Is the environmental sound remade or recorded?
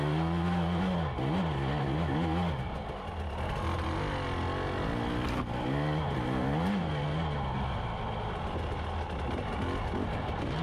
recorded